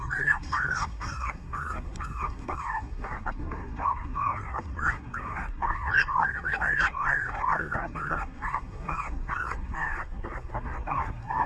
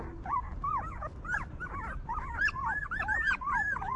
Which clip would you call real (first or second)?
second